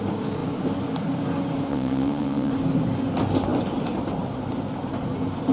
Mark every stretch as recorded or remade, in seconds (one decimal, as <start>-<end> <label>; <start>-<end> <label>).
0.0-1.7 recorded; 1.7-2.5 remade; 2.5-5.5 recorded